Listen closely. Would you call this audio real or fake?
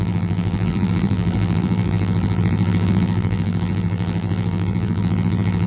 fake